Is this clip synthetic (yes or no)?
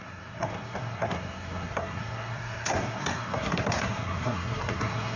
yes